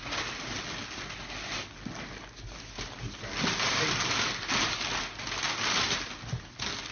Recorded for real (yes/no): yes